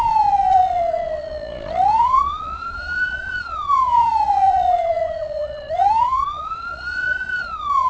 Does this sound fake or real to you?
fake